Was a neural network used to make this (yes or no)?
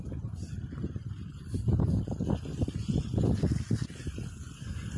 no